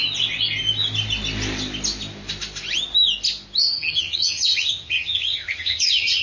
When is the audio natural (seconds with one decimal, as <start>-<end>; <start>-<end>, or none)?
0.0-3.7